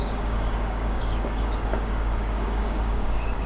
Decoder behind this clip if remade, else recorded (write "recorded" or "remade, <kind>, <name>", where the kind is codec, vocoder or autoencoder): remade, codec, DAC